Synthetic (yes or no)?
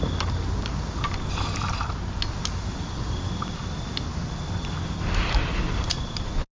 no